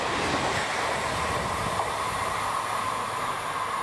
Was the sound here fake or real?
real